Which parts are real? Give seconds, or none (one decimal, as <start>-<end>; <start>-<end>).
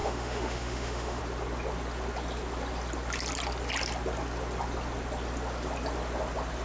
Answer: 1.2-6.6